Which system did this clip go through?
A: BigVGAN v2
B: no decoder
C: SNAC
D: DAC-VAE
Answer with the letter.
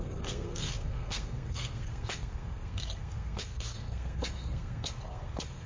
C